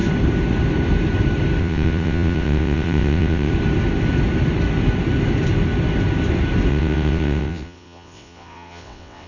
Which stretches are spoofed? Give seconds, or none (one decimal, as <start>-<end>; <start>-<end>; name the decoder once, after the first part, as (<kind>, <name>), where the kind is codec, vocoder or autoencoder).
1.6-3.5 (vocoder, WaveNeXt); 6.7-9.3